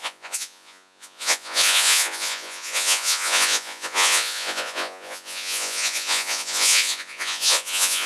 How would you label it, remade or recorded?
remade